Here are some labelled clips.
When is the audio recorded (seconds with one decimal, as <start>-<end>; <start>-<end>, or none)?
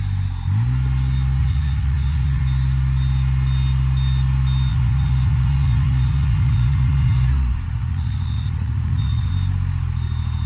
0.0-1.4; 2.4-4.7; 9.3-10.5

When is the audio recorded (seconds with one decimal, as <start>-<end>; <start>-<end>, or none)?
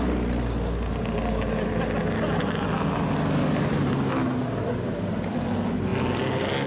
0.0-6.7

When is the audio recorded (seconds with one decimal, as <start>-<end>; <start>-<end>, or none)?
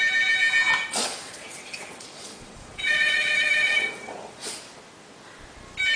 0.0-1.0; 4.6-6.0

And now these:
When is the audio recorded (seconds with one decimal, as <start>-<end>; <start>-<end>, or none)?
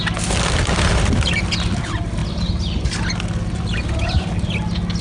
0.0-5.0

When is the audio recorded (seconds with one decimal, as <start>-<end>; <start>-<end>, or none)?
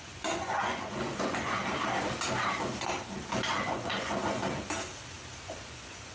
1.6-3.5; 4.4-5.4